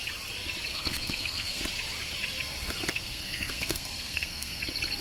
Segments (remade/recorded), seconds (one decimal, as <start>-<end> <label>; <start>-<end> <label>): 0.0-0.7 recorded; 0.7-1.6 remade; 1.6-2.9 recorded; 2.9-4.6 remade; 4.6-5.0 recorded